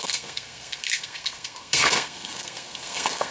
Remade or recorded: remade